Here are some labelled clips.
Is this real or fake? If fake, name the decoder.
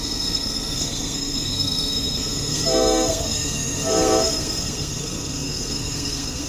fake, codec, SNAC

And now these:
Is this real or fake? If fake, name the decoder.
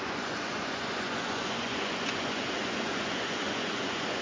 fake, vocoder, Vocos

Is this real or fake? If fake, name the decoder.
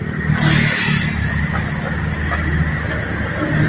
real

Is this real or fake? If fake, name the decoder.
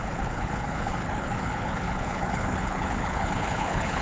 fake, codec, HILCodec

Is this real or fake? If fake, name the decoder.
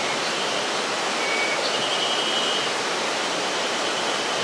real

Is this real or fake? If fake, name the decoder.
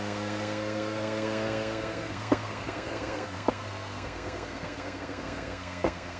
fake, codec, SNAC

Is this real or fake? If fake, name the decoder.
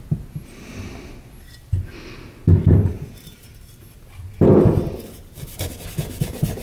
real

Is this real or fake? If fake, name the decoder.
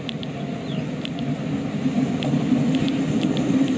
real